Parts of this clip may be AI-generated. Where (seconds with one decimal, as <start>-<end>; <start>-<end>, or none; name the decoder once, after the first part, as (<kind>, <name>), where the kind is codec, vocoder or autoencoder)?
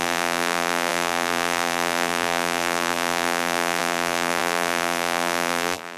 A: 0.0-6.0 (vocoder, BigVGAN v2)